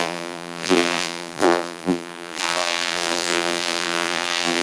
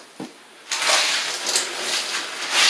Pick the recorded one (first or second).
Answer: second